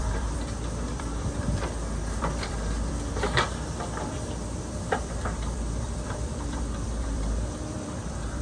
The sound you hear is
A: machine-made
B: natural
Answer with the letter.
A